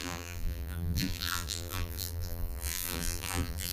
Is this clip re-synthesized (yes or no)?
yes